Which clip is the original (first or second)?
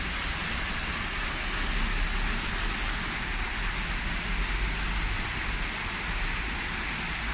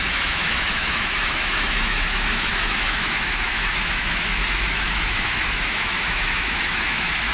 first